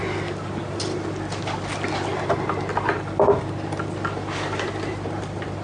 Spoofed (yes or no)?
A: no